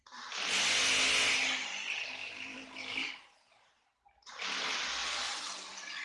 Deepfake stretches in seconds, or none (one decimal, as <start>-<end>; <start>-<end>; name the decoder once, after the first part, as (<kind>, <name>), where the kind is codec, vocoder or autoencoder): 2.2-2.7 (vocoder, BigVGAN v2); 5.0-6.0